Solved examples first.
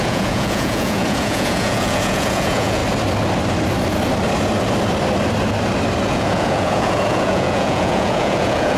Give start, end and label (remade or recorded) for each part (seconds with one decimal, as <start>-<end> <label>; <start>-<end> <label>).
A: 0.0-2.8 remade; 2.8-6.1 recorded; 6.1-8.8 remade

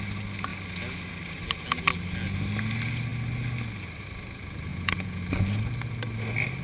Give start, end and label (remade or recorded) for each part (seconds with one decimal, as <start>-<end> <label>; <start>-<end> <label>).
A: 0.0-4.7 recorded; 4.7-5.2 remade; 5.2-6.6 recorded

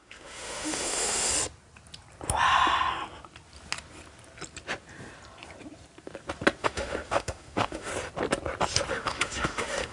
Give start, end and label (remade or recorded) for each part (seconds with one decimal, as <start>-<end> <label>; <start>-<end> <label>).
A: 0.0-1.3 remade; 1.3-6.6 recorded; 6.6-7.9 remade; 7.9-8.9 recorded; 8.9-9.9 remade

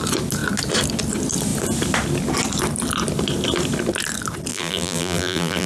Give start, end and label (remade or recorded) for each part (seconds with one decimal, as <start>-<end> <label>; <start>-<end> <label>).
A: 0.0-4.5 recorded; 4.5-5.7 remade

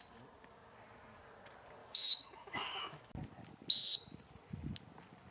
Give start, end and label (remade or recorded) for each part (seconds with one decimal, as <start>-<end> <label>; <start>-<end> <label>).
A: 0.0-1.8 recorded; 1.8-3.1 remade; 3.1-5.3 recorded

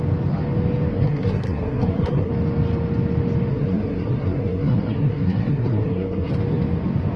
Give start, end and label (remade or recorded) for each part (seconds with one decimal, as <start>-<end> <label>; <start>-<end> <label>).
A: 0.0-0.9 recorded; 0.9-2.3 remade; 2.3-3.5 recorded; 3.5-6.3 remade; 6.3-7.2 recorded